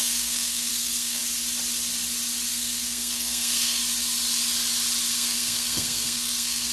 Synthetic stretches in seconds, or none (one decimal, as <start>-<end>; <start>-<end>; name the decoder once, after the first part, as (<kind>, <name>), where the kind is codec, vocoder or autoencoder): 0.0-1.2 (codec, SNAC); 2.5-3.8; 5.1-6.7